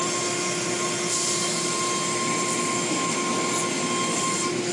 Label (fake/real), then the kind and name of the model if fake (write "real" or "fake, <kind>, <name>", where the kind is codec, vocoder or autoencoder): real